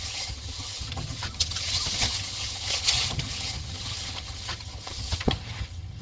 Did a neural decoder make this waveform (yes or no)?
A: yes